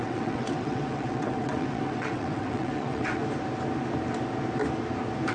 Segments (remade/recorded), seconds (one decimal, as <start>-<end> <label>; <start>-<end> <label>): 0.0-3.2 remade; 3.2-5.3 recorded